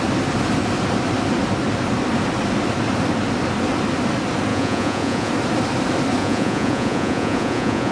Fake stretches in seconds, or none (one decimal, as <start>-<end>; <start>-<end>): 4.5-5.3; 6.2-7.9